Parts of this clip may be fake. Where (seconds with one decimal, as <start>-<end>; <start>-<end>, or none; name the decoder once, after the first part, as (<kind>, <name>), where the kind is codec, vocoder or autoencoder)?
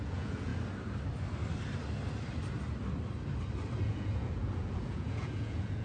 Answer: 0.0-0.5 (vocoder, Vocos); 3.8-5.8